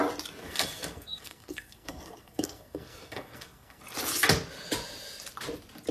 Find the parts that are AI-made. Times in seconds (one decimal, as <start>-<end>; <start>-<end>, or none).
0.4-3.8